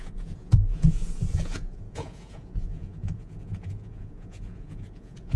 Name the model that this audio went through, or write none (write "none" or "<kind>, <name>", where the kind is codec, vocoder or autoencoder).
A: vocoder, Vocos